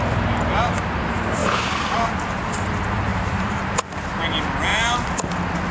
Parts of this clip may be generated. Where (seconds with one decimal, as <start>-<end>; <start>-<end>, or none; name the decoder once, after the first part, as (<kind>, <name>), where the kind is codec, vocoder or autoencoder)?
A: 1.4-1.9 (vocoder, BigVGAN v2); 3.1-4.2; 4.7-5.3